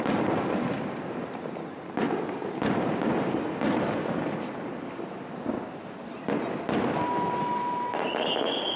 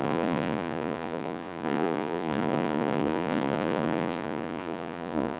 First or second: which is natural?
first